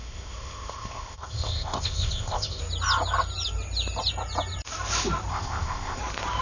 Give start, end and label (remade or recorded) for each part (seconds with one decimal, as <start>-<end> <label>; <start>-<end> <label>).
0.0-2.6 remade; 2.6-5.3 recorded; 5.3-6.0 remade; 6.0-6.4 recorded